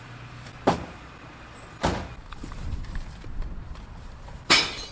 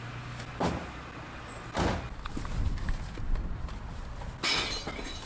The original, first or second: second